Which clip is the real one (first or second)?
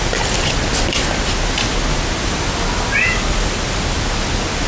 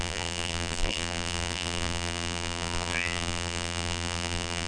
first